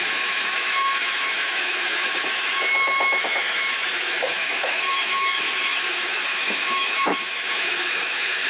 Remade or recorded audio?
remade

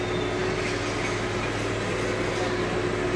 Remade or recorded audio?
recorded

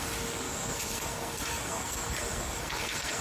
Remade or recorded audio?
remade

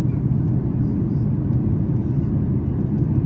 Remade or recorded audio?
recorded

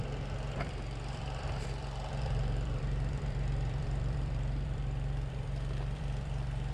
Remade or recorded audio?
remade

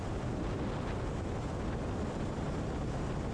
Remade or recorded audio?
recorded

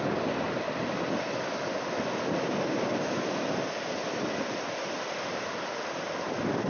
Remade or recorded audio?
recorded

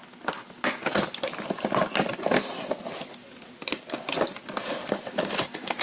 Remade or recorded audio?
recorded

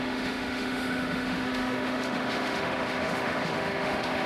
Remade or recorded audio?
remade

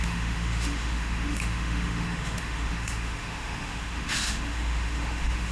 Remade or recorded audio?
remade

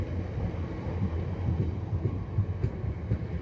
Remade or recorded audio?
recorded